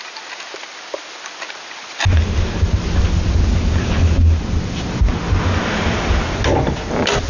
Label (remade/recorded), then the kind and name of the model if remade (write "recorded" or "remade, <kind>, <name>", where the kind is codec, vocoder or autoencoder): recorded